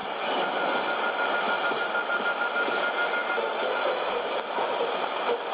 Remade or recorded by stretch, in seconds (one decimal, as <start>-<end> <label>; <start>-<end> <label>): 0.0-5.5 recorded